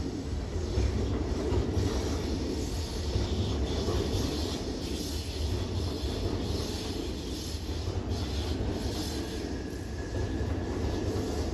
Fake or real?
real